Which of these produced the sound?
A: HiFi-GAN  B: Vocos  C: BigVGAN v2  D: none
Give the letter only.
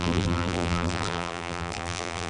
C